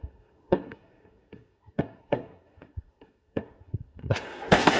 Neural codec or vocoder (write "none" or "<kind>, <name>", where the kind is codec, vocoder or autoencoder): codec, SNAC